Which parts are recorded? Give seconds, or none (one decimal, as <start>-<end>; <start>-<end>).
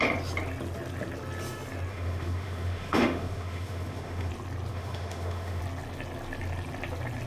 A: 0.0-1.9; 4.3-4.7; 5.6-7.3